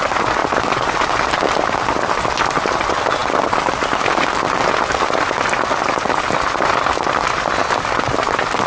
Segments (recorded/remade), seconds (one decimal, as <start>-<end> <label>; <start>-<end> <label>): 0.0-0.4 recorded; 0.4-2.2 remade; 2.2-8.7 recorded